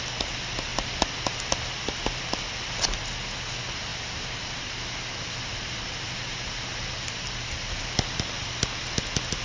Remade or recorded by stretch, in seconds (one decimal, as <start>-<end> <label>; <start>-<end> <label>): 0.0-3.9 recorded; 3.9-7.8 remade; 7.8-9.4 recorded